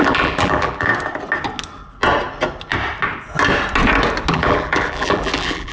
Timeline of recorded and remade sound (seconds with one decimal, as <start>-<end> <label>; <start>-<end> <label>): 0.0-0.9 remade; 0.9-4.3 recorded; 4.3-5.7 remade

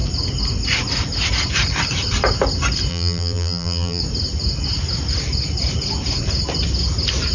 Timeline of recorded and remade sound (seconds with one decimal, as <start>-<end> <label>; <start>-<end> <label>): 0.0-2.9 recorded; 2.9-4.0 remade; 4.0-7.3 recorded

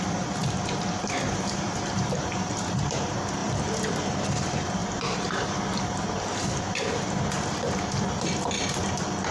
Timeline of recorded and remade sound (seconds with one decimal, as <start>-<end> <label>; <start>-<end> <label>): 0.0-0.4 recorded; 0.4-3.0 remade; 3.0-4.8 recorded; 4.8-6.5 remade; 6.5-9.3 recorded